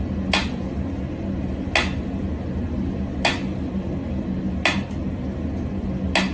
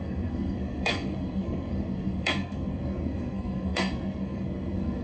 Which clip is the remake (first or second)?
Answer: second